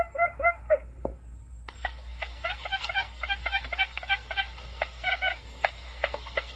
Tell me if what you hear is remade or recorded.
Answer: remade